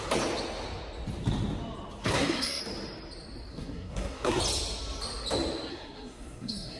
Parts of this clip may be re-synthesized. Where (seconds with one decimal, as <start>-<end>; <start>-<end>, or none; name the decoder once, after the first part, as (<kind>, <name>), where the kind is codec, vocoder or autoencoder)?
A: 2.0-2.6 (codec, SNAC); 3.5-4.4; 5.7-6.8